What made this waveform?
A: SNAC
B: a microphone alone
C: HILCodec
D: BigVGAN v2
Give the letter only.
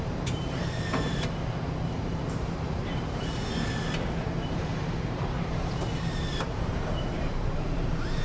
D